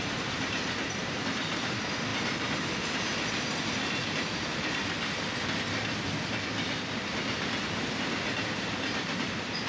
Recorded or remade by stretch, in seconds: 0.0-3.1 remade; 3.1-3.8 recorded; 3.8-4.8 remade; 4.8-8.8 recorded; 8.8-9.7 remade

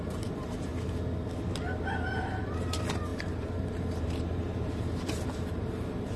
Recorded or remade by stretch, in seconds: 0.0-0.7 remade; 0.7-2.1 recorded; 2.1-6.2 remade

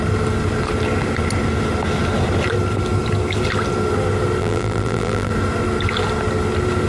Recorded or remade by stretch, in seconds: 0.0-4.4 recorded; 4.4-5.3 remade; 5.3-6.9 recorded